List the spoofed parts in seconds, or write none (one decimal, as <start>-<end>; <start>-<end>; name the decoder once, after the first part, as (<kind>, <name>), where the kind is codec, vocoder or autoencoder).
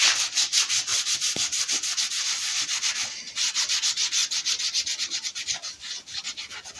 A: none